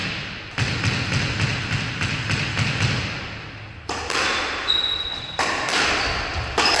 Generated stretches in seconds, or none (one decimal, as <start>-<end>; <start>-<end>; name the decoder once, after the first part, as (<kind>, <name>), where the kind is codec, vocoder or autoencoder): none